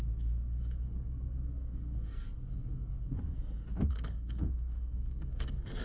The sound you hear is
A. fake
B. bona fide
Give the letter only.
A